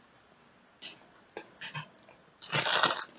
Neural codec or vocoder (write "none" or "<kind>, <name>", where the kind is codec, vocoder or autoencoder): none